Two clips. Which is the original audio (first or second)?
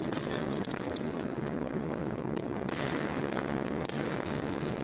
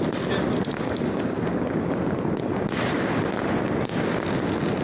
second